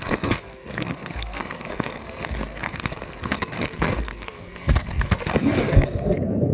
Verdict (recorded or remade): remade